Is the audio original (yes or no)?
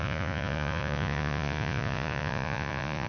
no